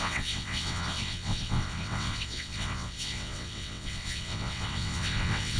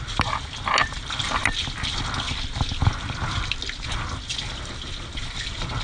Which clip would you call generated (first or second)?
first